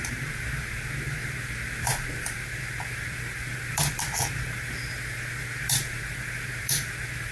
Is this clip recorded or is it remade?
remade